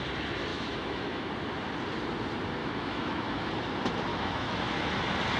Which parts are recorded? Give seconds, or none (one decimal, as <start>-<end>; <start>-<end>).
0.0-0.5; 1.3-2.6; 3.5-4.1; 4.6-5.4